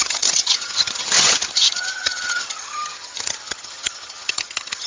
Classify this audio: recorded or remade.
remade